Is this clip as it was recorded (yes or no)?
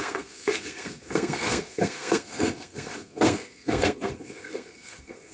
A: no